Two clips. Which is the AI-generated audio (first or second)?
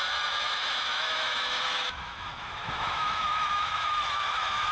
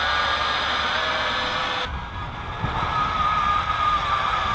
first